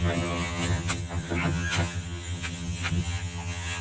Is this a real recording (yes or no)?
no